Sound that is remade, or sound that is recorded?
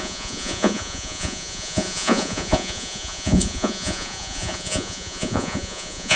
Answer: remade